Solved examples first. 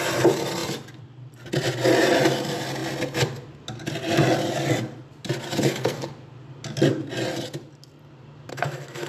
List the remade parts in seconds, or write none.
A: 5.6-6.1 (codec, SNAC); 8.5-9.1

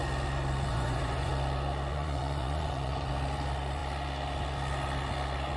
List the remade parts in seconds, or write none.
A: 0.7-1.3 (vocoder, Vocos); 1.9-3.1

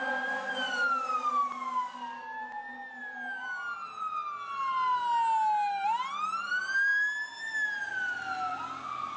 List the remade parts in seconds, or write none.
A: none

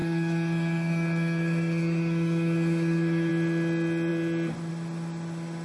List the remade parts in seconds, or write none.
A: 0.0-3.3 (codec, DAC)

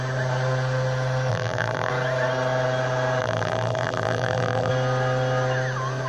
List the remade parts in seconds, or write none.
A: 1.3-1.9 (vocoder, BigVGAN v2); 3.2-4.7

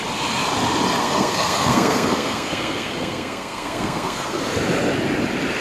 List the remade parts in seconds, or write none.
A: 1.0-4.4 (codec, SNAC)

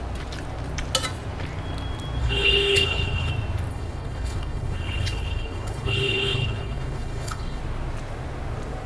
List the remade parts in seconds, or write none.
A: 2.2-3.3 (codec, HILCodec); 3.7-7.6